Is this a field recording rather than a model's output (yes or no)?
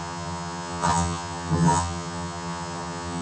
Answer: no